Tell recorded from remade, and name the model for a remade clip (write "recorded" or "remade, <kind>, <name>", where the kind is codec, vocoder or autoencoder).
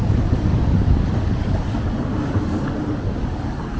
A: remade, codec, DAC